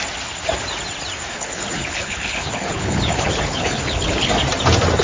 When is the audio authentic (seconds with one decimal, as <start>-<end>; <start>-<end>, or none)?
0.0-1.3; 4.3-5.0